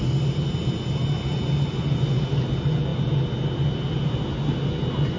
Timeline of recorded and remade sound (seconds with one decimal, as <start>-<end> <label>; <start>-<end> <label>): 0.0-5.2 recorded